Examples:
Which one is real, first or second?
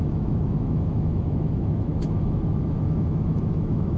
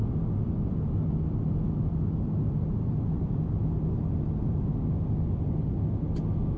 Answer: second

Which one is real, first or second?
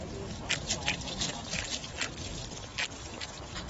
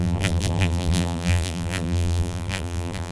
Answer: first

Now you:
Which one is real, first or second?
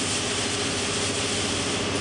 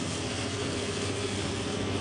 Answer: first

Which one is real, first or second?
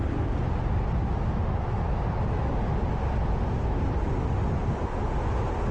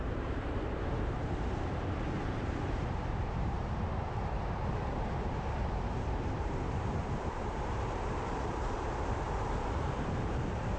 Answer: first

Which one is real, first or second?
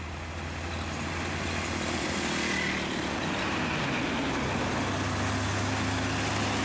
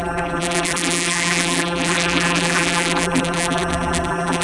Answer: first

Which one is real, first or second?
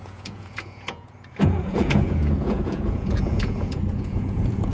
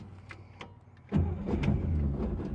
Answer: second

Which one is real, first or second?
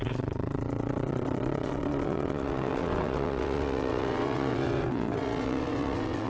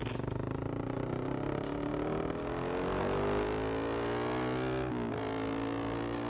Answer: second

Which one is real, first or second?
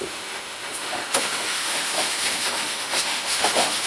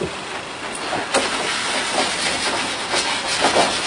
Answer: second